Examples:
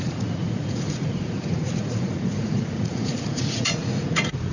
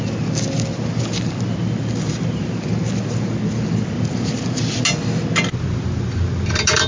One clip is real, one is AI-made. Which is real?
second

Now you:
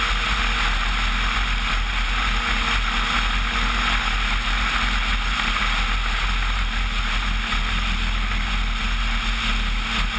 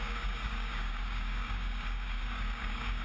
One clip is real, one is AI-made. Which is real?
first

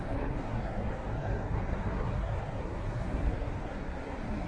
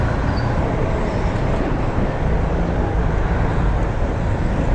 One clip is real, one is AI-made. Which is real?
second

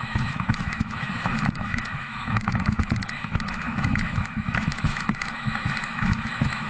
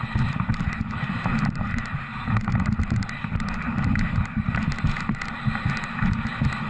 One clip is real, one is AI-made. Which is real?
second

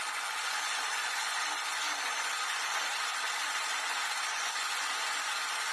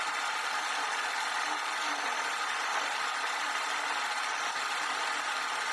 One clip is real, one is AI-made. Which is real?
second